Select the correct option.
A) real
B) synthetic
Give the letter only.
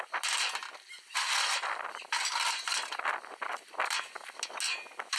A